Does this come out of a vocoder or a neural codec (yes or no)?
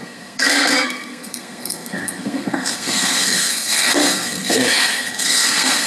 yes